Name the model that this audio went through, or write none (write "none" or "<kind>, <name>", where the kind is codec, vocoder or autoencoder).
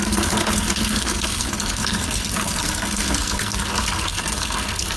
codec, SNAC